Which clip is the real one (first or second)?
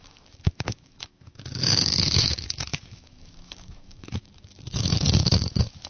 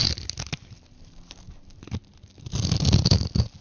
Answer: second